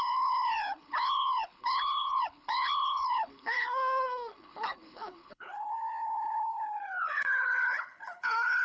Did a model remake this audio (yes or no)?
yes